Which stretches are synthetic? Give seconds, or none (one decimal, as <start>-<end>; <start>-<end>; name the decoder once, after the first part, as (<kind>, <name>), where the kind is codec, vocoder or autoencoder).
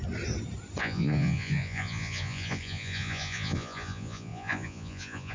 0.8-5.3 (vocoder, Vocos)